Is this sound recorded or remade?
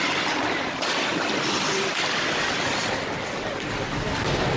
recorded